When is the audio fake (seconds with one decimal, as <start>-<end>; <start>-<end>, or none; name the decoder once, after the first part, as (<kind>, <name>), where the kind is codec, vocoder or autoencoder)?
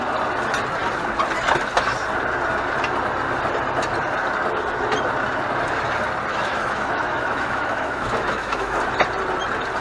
6.3-8.8 (autoencoder, DAC-VAE)